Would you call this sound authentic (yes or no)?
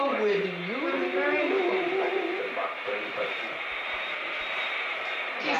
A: no